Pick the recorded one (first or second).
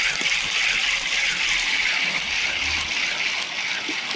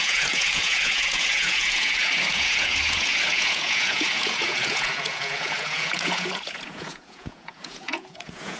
first